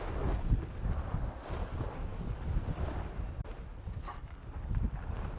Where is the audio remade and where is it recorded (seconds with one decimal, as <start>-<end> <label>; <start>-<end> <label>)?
0.0-5.4 recorded